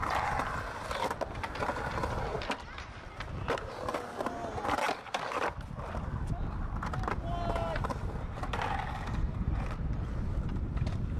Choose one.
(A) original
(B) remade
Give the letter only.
A